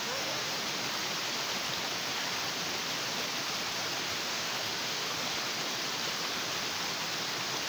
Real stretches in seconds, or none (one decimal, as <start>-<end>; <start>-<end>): 0.5-4.2; 5.0-7.7